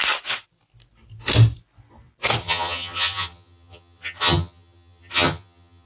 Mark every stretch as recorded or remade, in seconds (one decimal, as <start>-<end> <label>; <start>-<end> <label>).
0.0-2.4 recorded; 2.4-5.9 remade